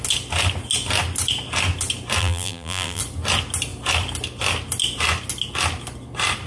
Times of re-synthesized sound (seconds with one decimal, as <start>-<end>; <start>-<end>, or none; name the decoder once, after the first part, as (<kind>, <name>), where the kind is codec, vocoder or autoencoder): 2.2-3.0 (vocoder, BigVGAN v2)